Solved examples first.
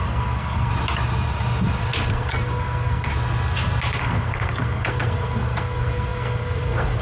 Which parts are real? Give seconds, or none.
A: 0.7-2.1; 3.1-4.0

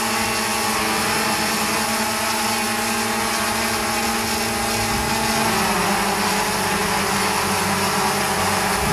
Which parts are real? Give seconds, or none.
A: 0.0-8.9

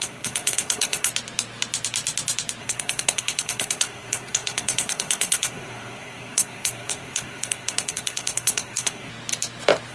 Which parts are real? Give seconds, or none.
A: 1.1-2.6; 9.1-9.9

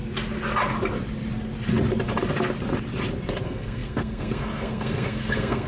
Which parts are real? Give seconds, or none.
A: 0.0-3.4

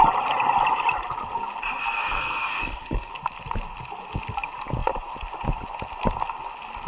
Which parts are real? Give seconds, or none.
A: 0.0-1.8; 3.1-6.9

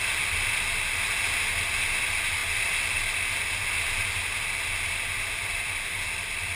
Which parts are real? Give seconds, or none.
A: 0.0-6.6